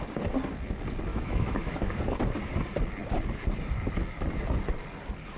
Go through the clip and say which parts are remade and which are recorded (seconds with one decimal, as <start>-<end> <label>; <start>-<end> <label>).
0.0-1.1 recorded; 1.1-2.0 remade; 2.0-5.4 recorded

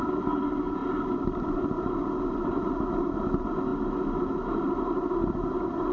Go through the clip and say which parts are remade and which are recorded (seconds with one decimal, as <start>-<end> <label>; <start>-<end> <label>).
0.0-5.9 recorded

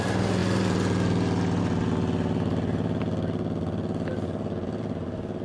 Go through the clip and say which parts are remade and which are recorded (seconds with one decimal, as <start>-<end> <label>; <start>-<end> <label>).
0.0-5.4 recorded

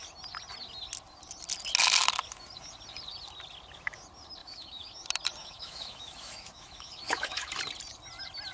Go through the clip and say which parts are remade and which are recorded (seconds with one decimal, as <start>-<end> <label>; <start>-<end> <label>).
0.0-4.4 recorded; 4.4-4.9 remade; 4.9-5.4 recorded; 5.4-7.5 remade; 7.5-8.5 recorded

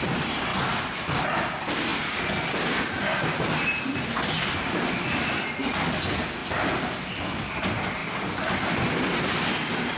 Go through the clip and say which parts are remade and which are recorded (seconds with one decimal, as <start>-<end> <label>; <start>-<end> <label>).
0.0-10.0 recorded